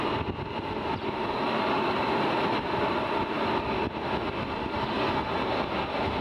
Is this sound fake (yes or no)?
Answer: no